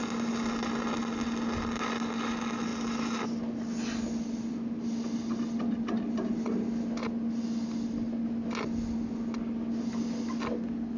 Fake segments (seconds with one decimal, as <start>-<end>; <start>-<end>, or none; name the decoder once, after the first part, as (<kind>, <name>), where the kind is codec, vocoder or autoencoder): none

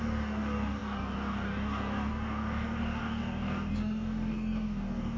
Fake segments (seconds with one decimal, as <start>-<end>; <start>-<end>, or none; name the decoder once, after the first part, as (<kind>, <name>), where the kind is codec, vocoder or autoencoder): 0.0-5.2 (codec, DAC)

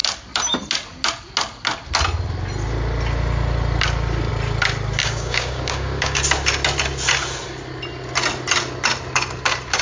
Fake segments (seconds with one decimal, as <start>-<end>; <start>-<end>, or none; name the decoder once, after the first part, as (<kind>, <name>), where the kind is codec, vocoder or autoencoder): 5.0-6.2 (codec, DAC)

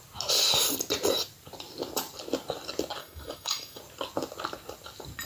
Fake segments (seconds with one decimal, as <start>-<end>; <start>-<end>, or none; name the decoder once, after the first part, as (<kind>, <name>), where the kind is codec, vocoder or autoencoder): 3.0-3.8 (codec, DAC)

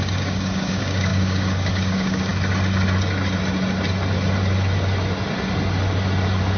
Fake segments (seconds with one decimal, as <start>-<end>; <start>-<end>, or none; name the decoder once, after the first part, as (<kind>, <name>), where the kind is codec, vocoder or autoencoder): 0.0-2.3 (codec, DAC)

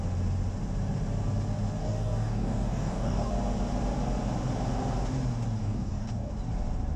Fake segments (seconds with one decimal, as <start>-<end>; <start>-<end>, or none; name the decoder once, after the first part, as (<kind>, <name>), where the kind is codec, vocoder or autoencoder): 1.8-3.3 (codec, DAC); 5.6-6.3

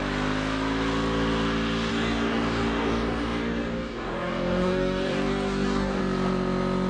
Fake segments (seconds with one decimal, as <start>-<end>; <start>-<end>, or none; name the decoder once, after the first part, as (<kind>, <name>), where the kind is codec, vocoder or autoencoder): 1.9-6.0 (codec, DAC)

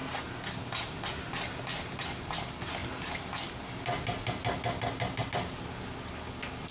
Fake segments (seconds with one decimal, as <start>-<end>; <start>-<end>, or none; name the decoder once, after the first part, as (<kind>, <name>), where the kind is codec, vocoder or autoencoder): none